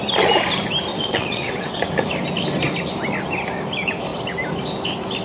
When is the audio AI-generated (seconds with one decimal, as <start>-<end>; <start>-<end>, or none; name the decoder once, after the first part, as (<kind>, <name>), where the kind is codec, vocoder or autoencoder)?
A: 0.9-1.8 (vocoder, WaveNeXt)